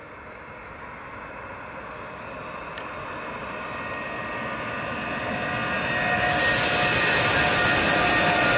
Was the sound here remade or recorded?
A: recorded